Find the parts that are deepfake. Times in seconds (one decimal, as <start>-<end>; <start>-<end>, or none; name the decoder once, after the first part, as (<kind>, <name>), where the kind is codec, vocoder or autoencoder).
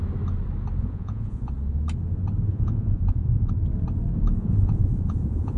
0.8-1.5 (vocoder, Vocos); 2.5-3.5; 4.4-5.6